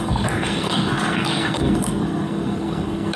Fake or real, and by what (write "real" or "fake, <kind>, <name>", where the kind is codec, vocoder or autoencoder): fake, codec, SNAC